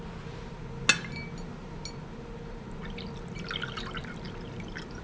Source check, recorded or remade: recorded